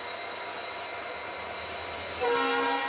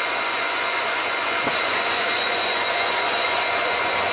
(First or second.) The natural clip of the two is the first